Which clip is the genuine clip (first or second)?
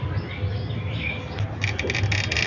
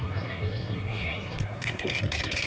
first